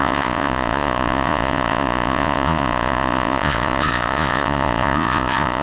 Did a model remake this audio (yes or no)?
yes